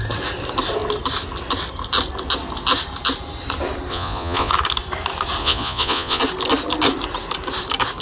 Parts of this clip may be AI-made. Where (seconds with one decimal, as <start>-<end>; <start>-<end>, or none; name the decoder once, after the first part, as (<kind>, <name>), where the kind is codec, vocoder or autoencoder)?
3.9-4.5 (vocoder, Vocos); 5.4-6.2